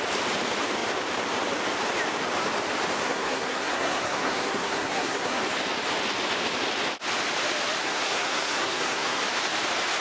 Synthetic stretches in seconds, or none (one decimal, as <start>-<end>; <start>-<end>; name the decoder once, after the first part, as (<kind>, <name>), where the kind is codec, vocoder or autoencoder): 3.0-5.4 (codec, SNAC); 7.8-9.2